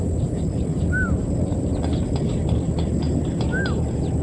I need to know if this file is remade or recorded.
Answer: recorded